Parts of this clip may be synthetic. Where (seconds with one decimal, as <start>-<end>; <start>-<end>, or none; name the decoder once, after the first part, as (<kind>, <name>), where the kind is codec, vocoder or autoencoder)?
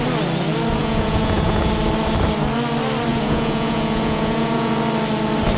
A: 0.8-1.7 (vocoder, Vocos); 3.1-4.7